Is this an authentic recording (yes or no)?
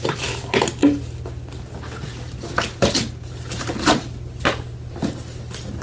yes